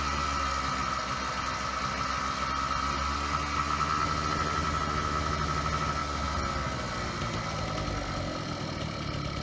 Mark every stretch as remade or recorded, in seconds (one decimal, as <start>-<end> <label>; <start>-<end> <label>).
0.0-9.4 recorded

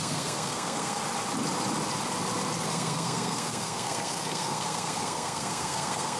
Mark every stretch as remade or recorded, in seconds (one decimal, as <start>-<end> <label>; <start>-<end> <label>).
0.0-1.0 remade; 1.0-2.6 recorded; 2.6-6.2 remade

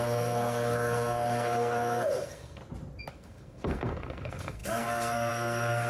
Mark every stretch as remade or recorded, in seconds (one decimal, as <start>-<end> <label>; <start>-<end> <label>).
0.0-2.6 remade; 2.6-3.1 recorded; 3.1-5.9 remade

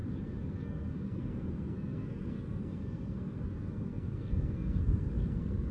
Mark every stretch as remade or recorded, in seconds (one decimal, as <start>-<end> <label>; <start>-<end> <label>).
0.0-5.7 remade